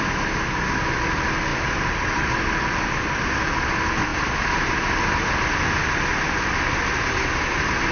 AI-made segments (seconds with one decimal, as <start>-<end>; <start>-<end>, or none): 1.5-3.4; 4.1-5.2